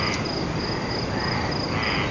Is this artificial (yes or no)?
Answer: no